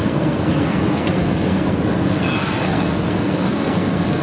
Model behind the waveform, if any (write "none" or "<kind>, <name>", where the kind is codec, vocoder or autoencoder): codec, SNAC